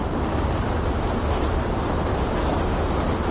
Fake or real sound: real